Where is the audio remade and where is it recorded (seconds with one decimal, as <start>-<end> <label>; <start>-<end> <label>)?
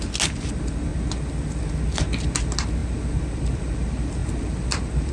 0.0-5.1 recorded